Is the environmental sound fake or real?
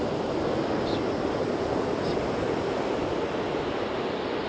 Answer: real